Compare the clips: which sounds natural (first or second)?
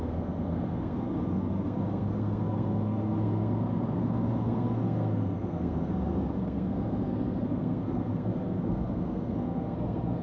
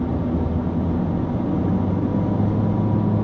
second